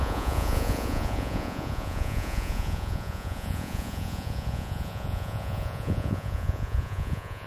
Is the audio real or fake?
fake